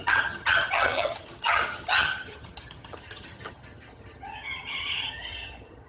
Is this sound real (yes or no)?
no